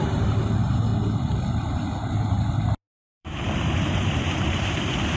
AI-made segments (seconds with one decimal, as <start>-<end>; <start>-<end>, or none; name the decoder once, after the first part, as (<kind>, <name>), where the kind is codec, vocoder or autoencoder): 0.0-0.9 (vocoder, BigVGAN v2); 3.2-5.2